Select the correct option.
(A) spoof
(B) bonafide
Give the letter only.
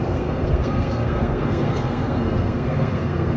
A